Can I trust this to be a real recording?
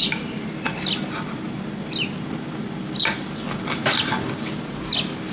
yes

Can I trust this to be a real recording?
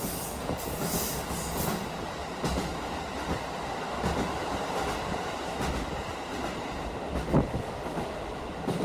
yes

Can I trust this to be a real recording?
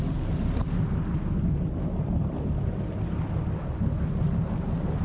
yes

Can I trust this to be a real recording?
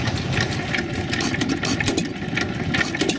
yes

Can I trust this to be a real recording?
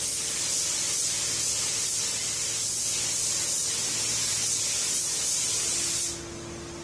yes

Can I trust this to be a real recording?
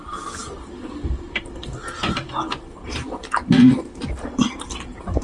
yes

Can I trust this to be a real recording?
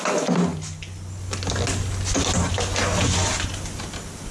yes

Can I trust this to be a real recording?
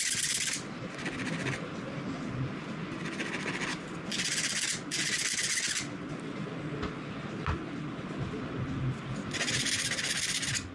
yes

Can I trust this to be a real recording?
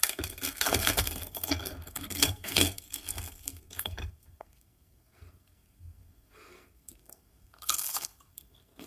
no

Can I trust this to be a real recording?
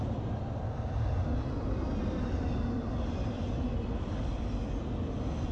no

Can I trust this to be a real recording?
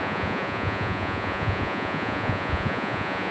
no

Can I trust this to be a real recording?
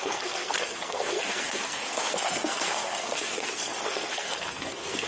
no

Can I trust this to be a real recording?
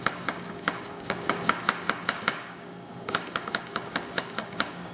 no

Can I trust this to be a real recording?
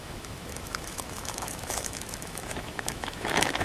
no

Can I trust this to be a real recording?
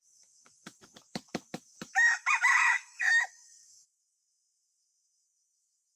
no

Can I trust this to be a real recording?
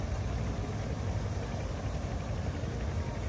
yes